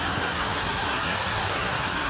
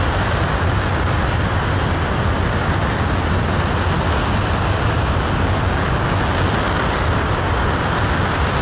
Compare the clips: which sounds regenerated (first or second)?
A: first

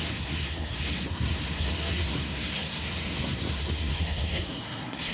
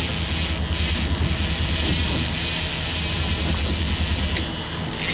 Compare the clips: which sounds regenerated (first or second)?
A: first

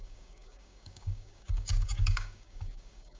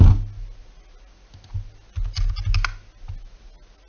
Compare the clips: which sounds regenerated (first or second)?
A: first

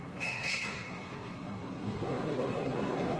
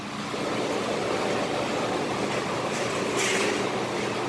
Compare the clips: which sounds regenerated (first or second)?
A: first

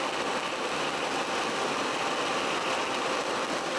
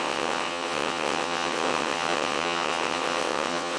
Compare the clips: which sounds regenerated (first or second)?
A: second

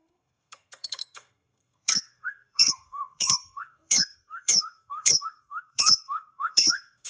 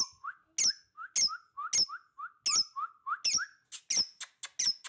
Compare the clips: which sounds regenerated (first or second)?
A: first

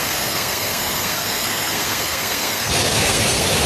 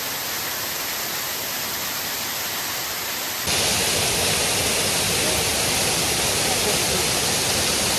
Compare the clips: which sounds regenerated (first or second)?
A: first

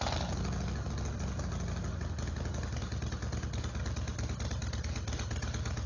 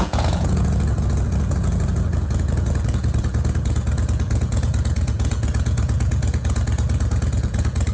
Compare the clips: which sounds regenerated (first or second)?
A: second